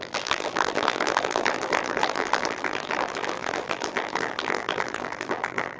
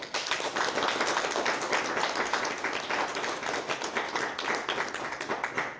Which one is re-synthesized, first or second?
first